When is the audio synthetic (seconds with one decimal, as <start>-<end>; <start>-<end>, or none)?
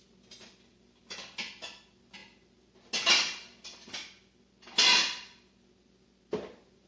none